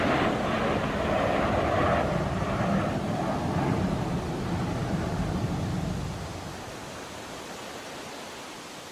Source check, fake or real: real